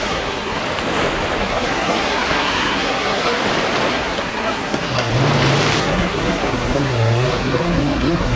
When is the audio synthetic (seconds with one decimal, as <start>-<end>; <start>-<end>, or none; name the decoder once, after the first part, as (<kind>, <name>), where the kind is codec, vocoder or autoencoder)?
0.0-0.6 (codec, SNAC); 1.4-3.4; 3.9-5.1; 5.8-8.4